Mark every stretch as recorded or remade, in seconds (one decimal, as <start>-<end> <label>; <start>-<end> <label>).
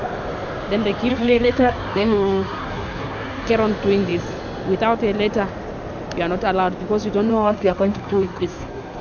0.0-1.1 recorded; 1.1-3.5 remade; 3.5-7.3 recorded; 7.3-9.0 remade